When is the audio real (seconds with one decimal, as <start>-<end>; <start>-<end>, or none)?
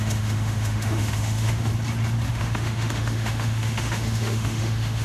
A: 1.7-2.3